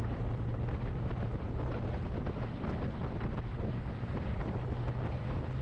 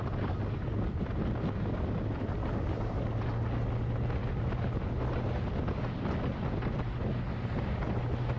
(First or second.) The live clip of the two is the second